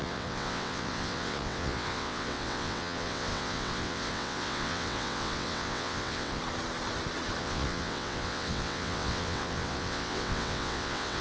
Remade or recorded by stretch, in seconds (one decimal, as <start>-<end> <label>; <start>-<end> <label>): 0.0-6.4 remade; 6.4-7.4 recorded; 7.4-11.2 remade